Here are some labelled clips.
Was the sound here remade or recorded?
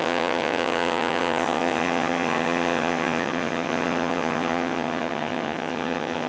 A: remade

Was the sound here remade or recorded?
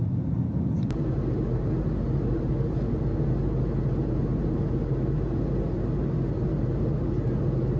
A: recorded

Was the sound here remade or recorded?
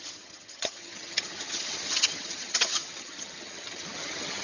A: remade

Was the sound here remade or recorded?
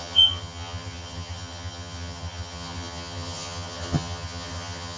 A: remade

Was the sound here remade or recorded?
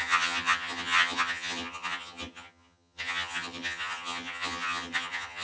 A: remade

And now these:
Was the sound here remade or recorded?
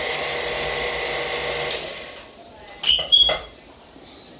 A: recorded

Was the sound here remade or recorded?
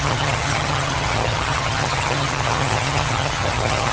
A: remade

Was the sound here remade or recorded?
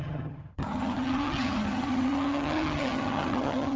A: remade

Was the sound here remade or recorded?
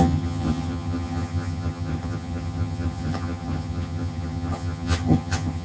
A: remade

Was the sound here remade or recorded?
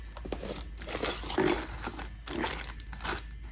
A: recorded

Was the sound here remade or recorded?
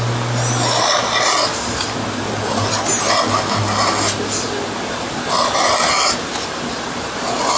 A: recorded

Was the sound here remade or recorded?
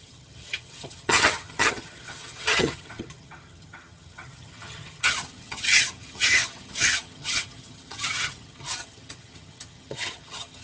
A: remade